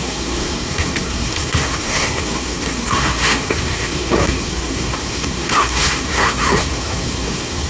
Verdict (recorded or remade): remade